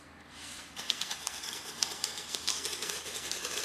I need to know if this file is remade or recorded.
remade